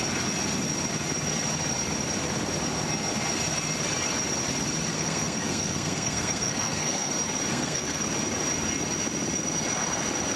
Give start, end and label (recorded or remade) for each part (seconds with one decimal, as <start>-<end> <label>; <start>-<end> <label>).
0.0-4.9 recorded; 4.9-7.1 remade; 7.1-7.5 recorded; 7.5-8.0 remade; 8.0-10.4 recorded